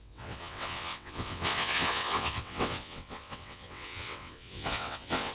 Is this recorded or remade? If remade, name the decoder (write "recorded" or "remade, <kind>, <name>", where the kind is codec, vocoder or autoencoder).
remade, vocoder, WaveNeXt